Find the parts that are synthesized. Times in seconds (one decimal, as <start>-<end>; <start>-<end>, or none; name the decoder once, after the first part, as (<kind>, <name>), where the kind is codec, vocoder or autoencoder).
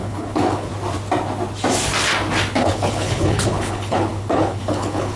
0.0-0.7 (codec, HILCodec); 2.6-5.2